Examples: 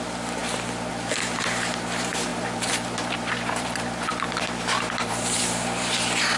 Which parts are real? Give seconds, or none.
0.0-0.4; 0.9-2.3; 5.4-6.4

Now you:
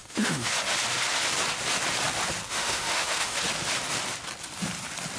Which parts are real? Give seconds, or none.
0.5-2.5; 3.4-5.2

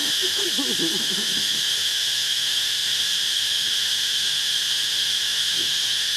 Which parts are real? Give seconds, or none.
0.4-1.0

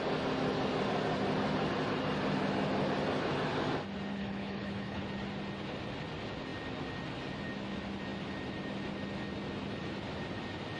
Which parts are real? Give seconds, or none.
0.0-4.1; 5.0-10.8

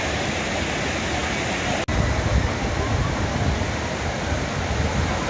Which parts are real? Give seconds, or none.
0.0-5.3

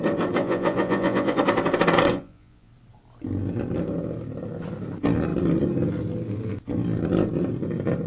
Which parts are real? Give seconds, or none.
0.0-0.4; 1.4-2.1; 2.7-8.1

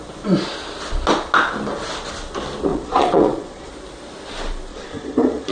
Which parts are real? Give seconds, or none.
0.0-2.7; 3.7-4.7